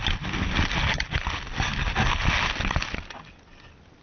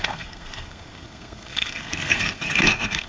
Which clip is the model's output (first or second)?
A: second